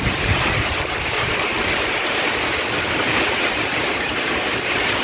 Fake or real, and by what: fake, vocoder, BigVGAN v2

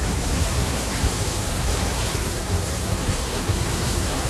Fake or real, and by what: fake, codec, SNAC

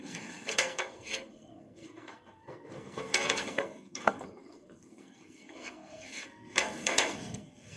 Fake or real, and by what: fake, codec, SNAC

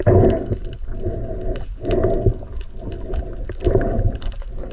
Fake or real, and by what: real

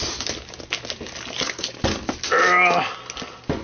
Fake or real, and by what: real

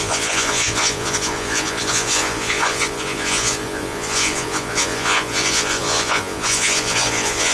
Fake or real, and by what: fake, vocoder, Vocos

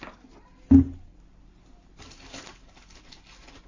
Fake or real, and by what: real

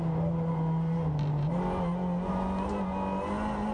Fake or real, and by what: real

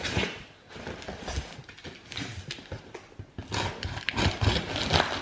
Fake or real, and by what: real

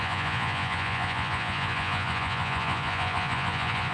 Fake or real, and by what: fake, vocoder, Vocos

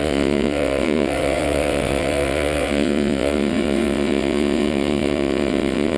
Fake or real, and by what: fake, vocoder, WaveNeXt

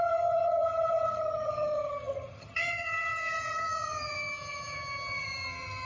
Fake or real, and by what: fake, vocoder, HiFi-GAN